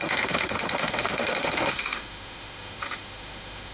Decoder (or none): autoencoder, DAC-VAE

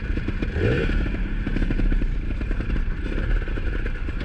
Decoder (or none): vocoder, BigVGAN v2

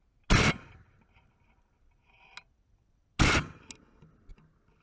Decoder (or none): none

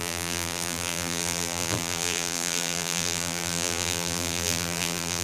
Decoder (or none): vocoder, BigVGAN v2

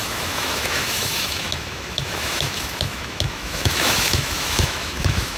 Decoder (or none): autoencoder, DAC-VAE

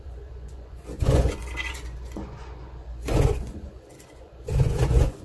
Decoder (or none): vocoder, Vocos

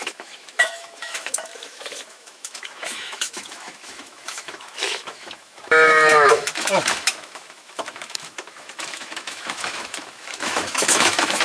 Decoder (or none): autoencoder, DAC-VAE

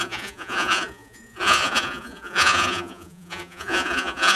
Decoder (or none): vocoder, Vocos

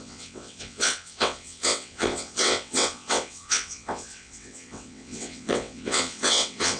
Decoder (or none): vocoder, WaveNeXt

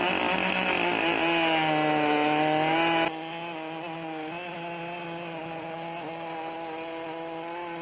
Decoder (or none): none